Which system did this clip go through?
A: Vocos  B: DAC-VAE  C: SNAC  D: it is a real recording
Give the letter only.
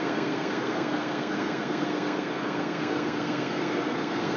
C